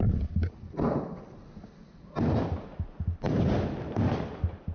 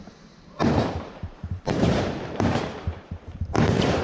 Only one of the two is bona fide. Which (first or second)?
first